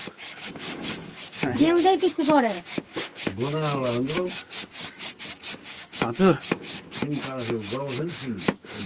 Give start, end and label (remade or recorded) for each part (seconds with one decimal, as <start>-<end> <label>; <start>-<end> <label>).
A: 0.0-8.9 remade